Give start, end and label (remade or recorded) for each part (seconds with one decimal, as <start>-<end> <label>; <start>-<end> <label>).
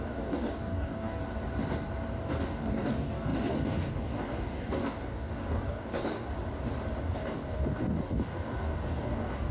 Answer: 0.0-1.2 remade; 1.2-2.4 recorded; 2.4-6.3 remade; 6.3-7.0 recorded; 7.0-9.5 remade